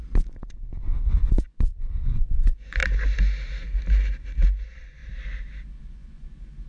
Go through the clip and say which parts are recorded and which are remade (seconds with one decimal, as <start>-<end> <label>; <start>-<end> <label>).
0.0-2.8 remade; 2.8-4.6 recorded; 4.6-5.0 remade; 5.0-5.8 recorded; 5.8-6.7 remade